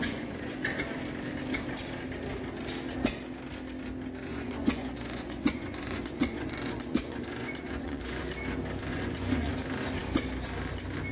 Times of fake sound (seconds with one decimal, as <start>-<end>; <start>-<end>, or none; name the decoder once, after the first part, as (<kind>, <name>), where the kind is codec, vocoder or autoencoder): 0.0-0.6 (vocoder, Vocos); 4.3-8.2; 8.9-9.5